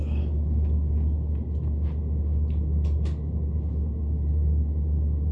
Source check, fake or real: real